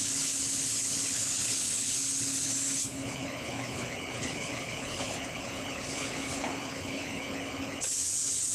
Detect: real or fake fake